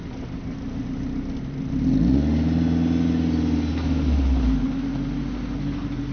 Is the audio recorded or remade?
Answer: recorded